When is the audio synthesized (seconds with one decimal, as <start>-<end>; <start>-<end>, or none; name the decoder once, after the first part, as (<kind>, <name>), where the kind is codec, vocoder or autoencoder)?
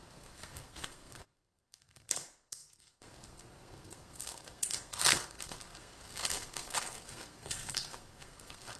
0.0-8.8 (codec, SNAC)